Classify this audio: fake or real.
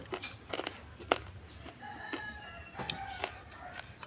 real